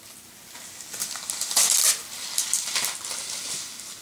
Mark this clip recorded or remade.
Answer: recorded